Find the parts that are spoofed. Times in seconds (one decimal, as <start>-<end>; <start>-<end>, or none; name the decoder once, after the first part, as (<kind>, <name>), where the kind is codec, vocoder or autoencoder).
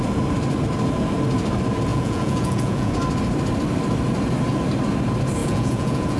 1.9-2.9 (vocoder, Vocos); 5.4-6.2